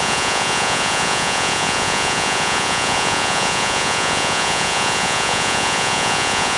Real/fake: fake